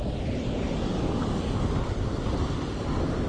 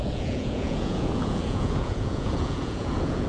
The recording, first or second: first